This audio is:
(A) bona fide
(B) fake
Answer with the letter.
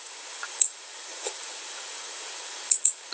B